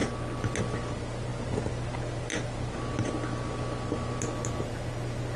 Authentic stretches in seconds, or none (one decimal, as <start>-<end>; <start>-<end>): 0.0-5.4